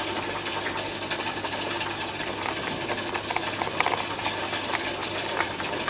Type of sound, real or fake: real